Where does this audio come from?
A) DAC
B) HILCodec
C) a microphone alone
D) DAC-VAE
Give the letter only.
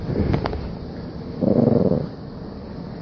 C